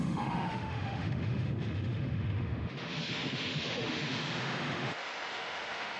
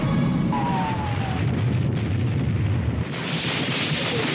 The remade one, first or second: first